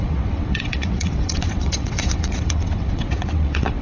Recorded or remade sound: remade